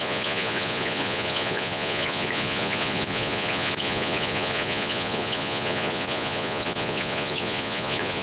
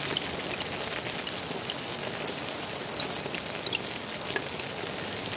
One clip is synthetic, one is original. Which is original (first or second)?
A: second